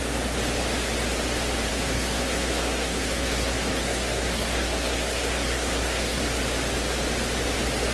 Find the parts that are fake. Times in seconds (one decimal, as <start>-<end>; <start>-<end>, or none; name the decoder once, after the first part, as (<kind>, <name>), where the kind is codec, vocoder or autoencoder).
1.7-6.2 (codec, SNAC)